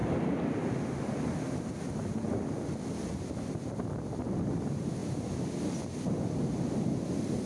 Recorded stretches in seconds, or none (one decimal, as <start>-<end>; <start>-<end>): 0.0-7.5